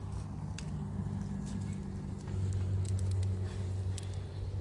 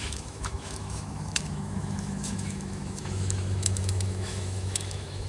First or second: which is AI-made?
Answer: second